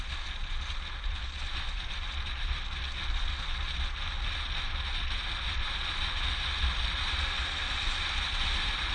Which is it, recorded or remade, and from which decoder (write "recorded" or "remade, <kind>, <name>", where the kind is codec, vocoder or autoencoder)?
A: recorded